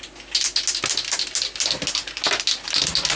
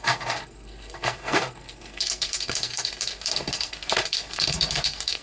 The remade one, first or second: second